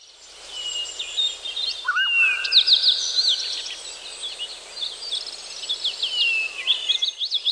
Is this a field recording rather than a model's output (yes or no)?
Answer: yes